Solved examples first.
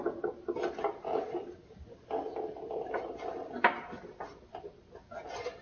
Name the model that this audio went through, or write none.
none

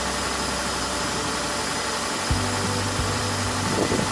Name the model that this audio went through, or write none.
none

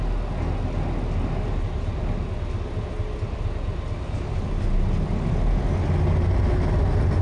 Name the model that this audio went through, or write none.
none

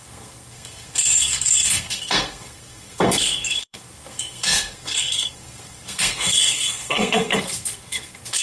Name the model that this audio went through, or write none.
codec, SNAC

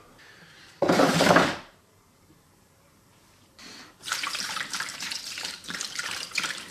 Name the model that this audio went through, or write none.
vocoder, BigVGAN v2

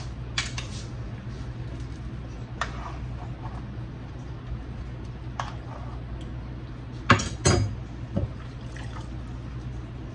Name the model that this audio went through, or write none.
none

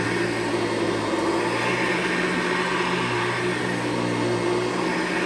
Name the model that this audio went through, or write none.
none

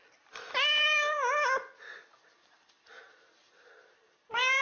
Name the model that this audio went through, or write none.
none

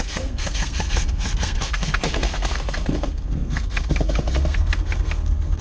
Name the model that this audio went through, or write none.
codec, SNAC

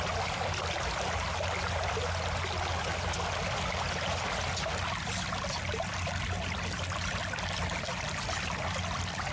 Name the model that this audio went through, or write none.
none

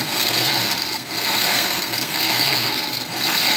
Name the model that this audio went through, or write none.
codec, SNAC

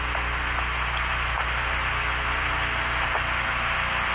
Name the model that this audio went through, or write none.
none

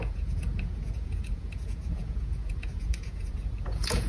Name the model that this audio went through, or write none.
vocoder, Vocos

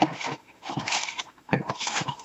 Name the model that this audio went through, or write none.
autoencoder, DAC-VAE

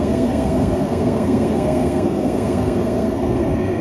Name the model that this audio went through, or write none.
codec, SNAC